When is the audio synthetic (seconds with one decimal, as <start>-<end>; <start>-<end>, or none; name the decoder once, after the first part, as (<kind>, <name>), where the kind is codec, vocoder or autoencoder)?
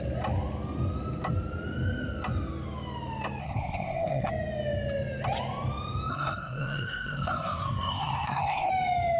3.4-4.3 (codec, SNAC); 6.1-8.7